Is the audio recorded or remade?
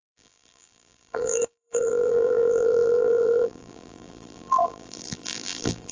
remade